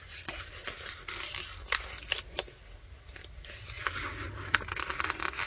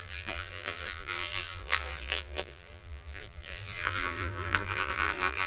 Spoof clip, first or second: second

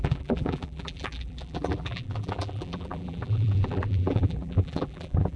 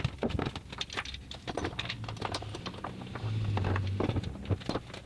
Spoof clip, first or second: first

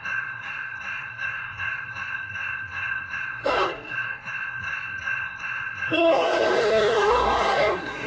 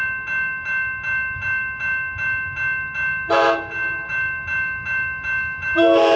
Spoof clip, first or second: first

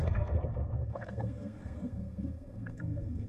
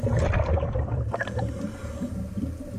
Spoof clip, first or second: first